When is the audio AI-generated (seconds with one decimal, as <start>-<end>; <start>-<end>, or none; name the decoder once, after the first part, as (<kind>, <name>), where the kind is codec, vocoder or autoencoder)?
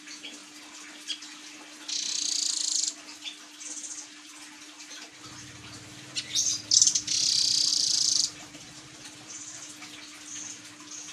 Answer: 7.7-9.7 (vocoder, BigVGAN v2)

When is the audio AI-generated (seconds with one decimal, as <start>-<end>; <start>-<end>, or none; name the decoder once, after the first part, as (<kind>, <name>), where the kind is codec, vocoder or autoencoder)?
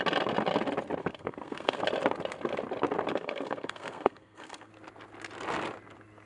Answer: 1.0-1.8 (codec, SNAC); 3.1-4.7